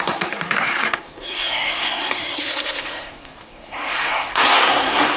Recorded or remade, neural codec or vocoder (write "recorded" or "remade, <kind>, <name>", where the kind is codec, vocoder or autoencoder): remade, codec, SNAC